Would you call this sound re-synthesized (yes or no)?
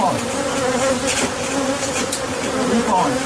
yes